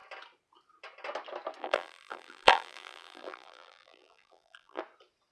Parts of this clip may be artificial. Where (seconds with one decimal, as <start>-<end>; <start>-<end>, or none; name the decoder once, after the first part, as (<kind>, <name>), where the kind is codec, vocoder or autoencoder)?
1.6-4.8 (vocoder, BigVGAN v2)